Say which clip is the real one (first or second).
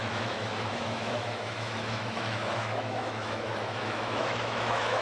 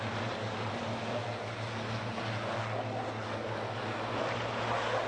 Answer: second